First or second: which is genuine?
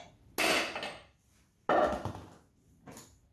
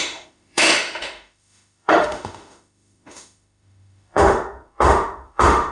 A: first